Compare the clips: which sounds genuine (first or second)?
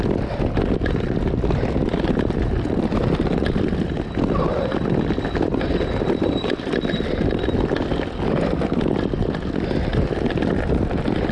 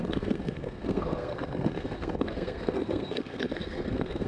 first